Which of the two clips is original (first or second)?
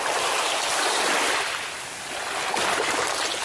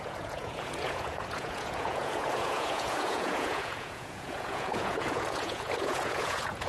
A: first